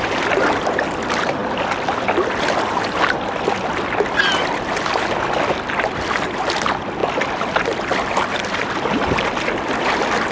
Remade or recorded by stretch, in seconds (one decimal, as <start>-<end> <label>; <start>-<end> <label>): 0.0-10.3 recorded